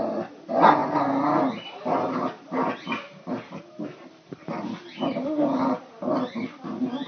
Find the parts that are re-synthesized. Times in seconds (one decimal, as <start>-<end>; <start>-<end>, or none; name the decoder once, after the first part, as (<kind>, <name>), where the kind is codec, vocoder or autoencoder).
none